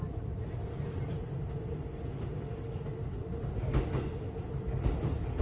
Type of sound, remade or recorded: recorded